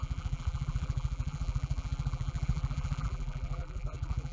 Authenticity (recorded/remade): remade